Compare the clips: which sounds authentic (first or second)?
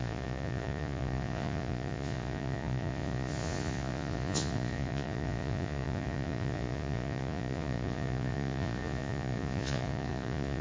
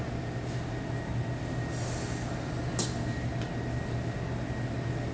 second